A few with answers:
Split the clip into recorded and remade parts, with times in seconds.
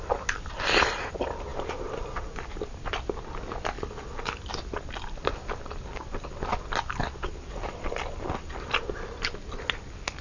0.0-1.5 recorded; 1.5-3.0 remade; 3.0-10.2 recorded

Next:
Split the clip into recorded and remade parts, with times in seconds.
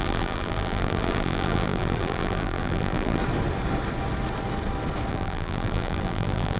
0.0-3.2 remade; 3.2-5.1 recorded; 5.1-6.6 remade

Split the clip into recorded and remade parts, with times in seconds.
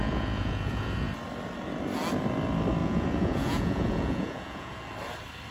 0.0-1.1 remade; 1.1-2.8 recorded; 2.8-4.8 remade; 4.8-5.5 recorded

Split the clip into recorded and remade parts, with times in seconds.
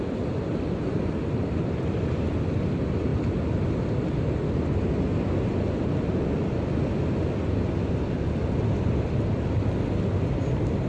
0.0-10.9 recorded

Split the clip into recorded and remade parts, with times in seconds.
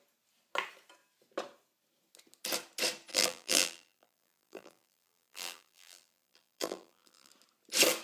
0.0-3.1 recorded; 3.1-7.3 remade; 7.3-8.0 recorded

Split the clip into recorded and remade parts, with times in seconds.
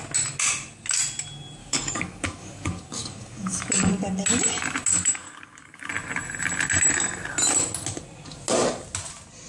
0.0-1.6 recorded; 1.6-3.9 remade; 3.9-4.9 recorded; 4.9-5.9 remade; 5.9-9.5 recorded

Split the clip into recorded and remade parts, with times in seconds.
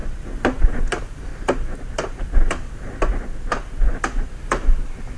0.0-0.9 recorded; 0.9-1.3 remade; 1.3-4.4 recorded; 4.4-5.2 remade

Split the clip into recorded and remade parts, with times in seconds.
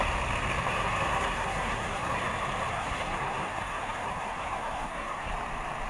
0.0-0.7 recorded; 0.7-2.2 remade; 2.2-2.7 recorded; 2.7-5.3 remade; 5.3-5.9 recorded